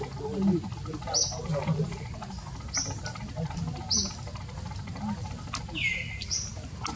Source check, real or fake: real